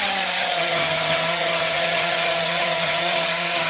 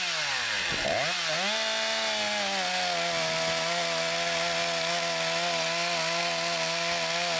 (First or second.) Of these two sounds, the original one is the second